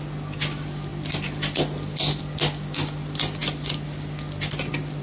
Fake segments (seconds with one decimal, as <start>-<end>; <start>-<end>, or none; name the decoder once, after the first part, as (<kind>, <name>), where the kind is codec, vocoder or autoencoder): none